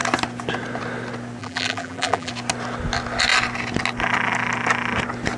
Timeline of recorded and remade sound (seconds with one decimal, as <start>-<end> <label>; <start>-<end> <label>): 0.0-1.4 recorded; 1.4-2.3 remade; 2.3-5.4 recorded

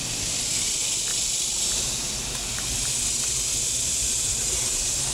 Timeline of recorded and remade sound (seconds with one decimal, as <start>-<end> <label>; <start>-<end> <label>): 0.0-1.1 recorded; 1.1-2.2 remade; 2.2-3.5 recorded; 3.5-4.3 remade; 4.3-5.1 recorded

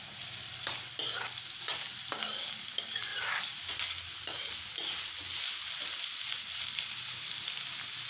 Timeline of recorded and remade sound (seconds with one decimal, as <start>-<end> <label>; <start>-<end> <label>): 0.0-3.1 recorded; 3.1-3.7 remade; 3.7-8.1 recorded

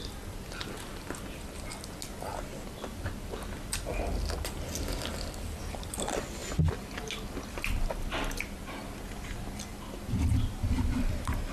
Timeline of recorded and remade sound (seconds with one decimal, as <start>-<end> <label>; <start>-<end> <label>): 0.0-11.5 recorded

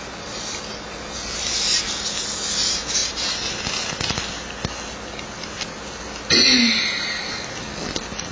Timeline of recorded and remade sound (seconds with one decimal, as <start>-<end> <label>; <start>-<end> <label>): 0.0-3.0 recorded; 3.0-3.5 remade; 3.5-8.3 recorded

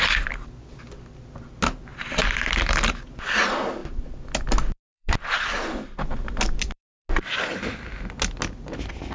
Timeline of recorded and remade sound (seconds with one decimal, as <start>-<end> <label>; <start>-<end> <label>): 0.0-1.9 recorded; 1.9-2.6 remade; 2.6-3.8 recorded; 3.8-7.1 remade; 7.1-9.1 recorded